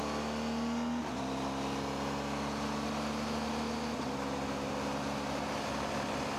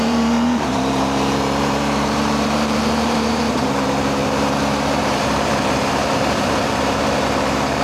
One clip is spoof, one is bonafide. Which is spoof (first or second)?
second